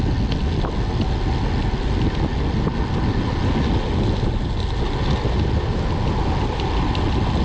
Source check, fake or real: real